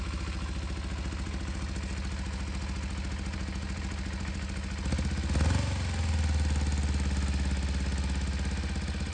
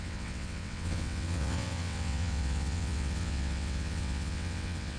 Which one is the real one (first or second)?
first